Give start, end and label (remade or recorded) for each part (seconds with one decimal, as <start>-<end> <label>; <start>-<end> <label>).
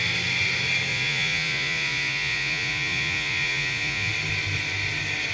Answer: 0.0-0.9 recorded; 0.9-4.1 remade; 4.1-5.3 recorded